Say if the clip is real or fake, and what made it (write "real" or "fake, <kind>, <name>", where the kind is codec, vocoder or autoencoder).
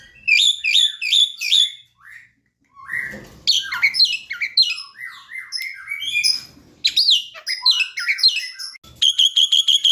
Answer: real